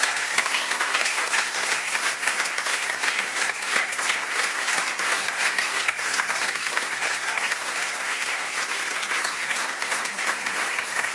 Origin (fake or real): fake